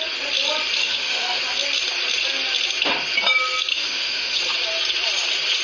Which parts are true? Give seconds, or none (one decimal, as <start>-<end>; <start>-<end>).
0.0-0.8; 1.4-3.7; 4.4-5.6